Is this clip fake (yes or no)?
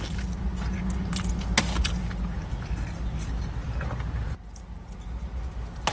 no